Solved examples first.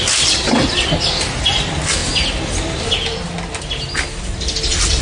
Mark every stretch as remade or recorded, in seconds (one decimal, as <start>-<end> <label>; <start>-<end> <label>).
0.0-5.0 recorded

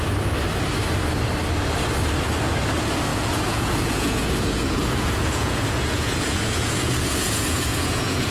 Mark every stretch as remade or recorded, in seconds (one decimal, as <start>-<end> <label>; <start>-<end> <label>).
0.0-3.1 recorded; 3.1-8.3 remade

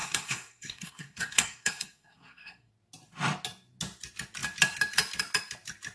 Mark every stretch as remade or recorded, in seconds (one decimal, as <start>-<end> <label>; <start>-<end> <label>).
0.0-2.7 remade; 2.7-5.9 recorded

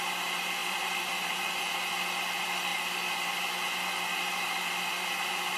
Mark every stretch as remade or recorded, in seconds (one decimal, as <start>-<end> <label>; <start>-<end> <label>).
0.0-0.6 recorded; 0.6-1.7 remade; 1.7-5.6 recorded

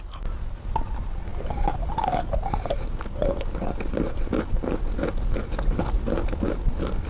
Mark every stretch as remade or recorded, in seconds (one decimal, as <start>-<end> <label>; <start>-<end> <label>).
0.0-1.3 recorded; 1.3-1.8 remade; 1.8-7.1 recorded

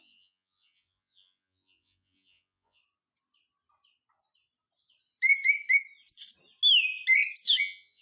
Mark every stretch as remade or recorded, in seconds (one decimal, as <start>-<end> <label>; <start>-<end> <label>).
0.0-2.8 remade; 2.8-7.6 recorded; 7.6-8.0 remade

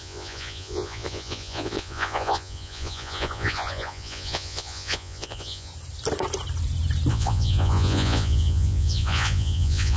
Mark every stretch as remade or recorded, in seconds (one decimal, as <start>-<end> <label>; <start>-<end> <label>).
0.0-5.7 remade; 5.7-7.1 recorded; 7.1-10.0 remade

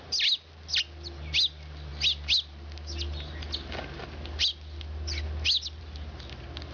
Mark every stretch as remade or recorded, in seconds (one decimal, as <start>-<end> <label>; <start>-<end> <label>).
0.0-6.7 recorded